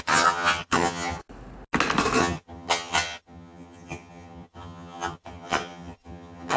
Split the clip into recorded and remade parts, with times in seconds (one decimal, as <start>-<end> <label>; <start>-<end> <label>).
0.0-1.2 remade; 1.2-2.2 recorded; 2.2-6.6 remade